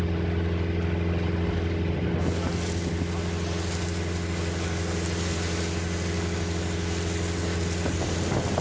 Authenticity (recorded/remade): recorded